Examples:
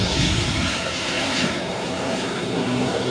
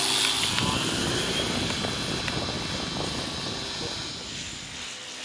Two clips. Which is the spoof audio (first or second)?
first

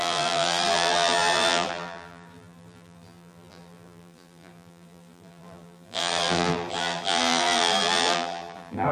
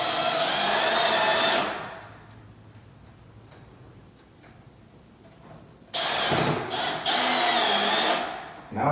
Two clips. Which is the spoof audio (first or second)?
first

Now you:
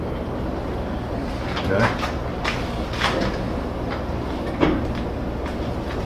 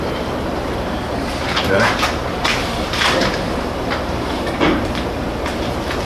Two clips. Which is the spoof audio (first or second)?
second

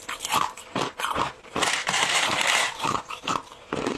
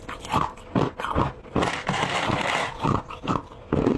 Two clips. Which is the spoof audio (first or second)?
first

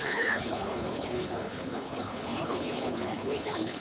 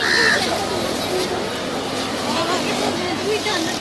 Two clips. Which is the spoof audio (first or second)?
first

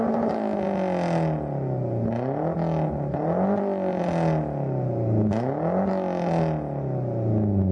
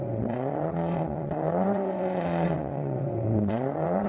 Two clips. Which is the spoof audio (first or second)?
second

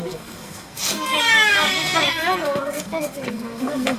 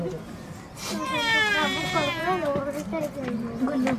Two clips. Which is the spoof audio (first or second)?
first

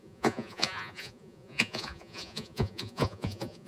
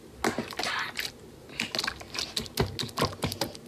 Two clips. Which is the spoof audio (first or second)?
first